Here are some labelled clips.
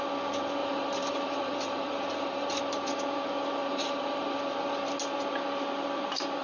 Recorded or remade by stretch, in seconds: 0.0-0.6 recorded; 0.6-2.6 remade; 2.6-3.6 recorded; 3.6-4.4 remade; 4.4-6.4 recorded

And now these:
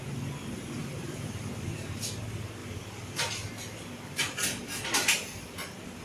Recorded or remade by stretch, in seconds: 0.0-0.8 recorded; 0.8-2.1 remade; 2.1-2.6 recorded; 2.6-3.3 remade; 3.3-6.0 recorded

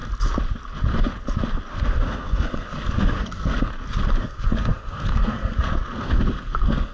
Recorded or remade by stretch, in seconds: 0.0-1.7 recorded; 1.7-3.7 remade; 3.7-4.2 recorded; 4.2-6.9 remade